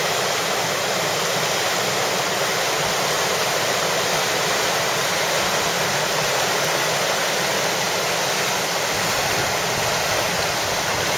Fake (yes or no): no